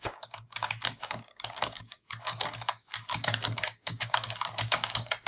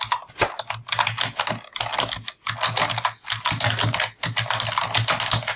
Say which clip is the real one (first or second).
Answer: second